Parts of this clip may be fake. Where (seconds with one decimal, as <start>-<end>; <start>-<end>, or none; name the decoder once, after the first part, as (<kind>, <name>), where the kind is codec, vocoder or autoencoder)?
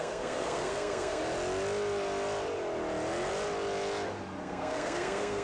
0.0-1.2 (codec, SNAC); 4.4-5.4